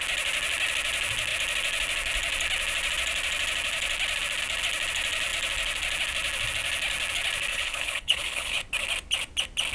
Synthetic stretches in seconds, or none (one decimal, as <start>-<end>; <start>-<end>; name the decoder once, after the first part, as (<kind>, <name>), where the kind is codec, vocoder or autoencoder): 7.5-8.6 (codec, HILCodec)